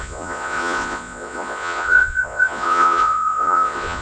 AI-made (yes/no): yes